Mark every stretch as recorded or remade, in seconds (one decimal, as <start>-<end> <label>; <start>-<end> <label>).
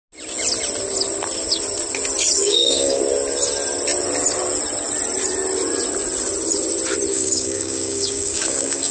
0.0-2.4 recorded; 2.4-3.0 remade; 3.0-7.1 recorded; 7.1-8.9 remade